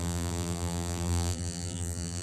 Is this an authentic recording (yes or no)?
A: no